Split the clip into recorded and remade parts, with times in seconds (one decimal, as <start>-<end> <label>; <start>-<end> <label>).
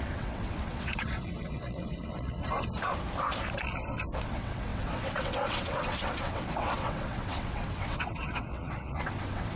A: 0.0-2.4 remade; 2.4-4.2 recorded; 4.2-9.6 remade